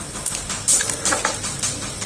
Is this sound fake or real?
real